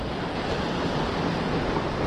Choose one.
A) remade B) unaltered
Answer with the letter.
B